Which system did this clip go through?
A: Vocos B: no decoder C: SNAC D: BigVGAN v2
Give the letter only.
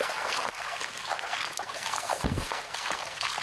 C